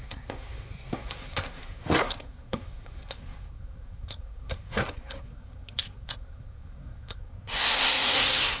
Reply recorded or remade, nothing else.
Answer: remade